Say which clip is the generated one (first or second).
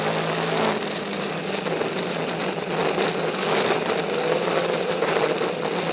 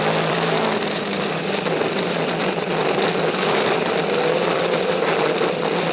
second